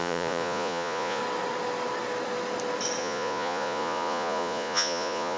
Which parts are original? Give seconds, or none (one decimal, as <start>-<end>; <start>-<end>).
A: 1.2-3.0

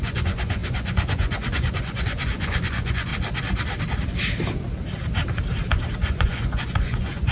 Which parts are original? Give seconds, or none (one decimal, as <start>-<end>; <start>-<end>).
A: 3.1-6.1

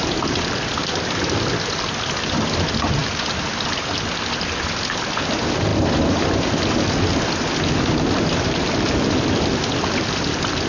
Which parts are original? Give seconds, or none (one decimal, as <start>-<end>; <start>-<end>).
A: 0.0-10.7

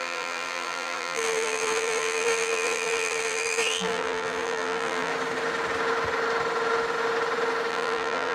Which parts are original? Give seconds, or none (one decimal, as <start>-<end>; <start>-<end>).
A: 5.1-7.7

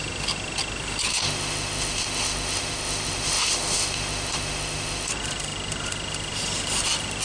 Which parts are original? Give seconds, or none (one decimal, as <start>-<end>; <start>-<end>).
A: 0.0-1.1; 5.1-7.2

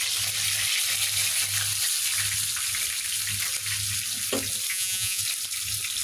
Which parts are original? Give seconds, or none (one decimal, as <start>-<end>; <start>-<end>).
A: 0.0-4.7; 5.2-6.0